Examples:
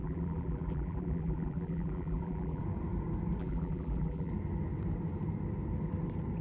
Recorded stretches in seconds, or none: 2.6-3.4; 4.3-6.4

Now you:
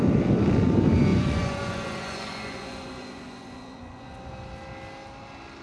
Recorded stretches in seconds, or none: 0.0-1.1; 4.3-5.6